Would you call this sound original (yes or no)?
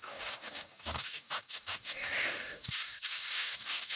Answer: no